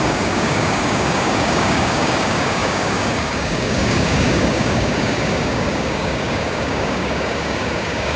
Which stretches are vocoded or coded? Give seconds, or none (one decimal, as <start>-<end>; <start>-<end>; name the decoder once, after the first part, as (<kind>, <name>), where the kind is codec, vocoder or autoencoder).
0.0-8.2 (codec, DAC)